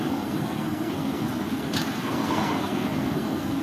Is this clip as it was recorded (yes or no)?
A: no